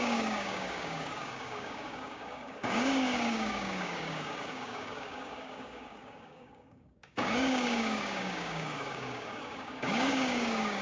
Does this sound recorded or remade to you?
remade